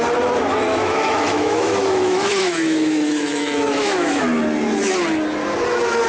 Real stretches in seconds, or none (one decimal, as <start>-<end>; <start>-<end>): 0.0-0.7; 4.2-6.1